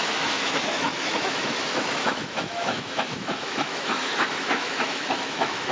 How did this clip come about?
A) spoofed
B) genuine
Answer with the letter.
A